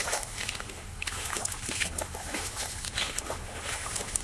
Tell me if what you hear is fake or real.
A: fake